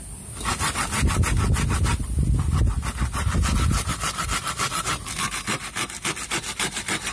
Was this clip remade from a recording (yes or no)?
no